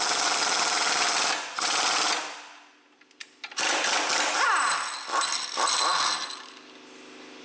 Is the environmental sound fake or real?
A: real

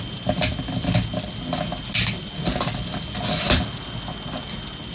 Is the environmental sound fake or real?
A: real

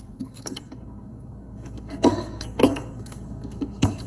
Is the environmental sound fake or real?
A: fake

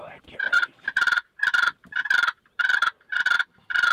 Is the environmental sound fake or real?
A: fake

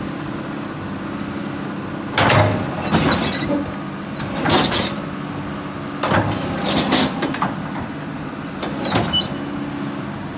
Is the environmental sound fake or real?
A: real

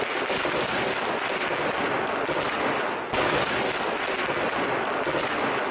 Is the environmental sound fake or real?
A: real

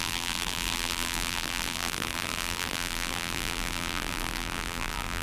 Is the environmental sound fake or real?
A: fake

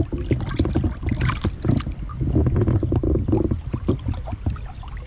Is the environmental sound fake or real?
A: real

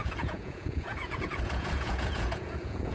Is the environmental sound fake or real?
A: fake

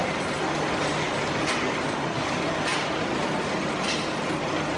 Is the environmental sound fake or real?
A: real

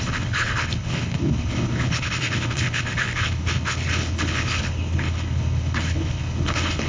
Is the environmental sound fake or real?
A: fake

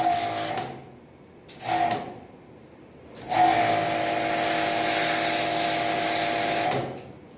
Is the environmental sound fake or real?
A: real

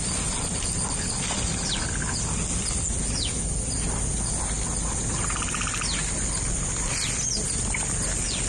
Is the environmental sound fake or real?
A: real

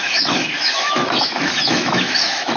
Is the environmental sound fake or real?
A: fake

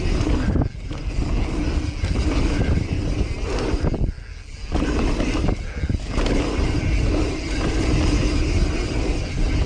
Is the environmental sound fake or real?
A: real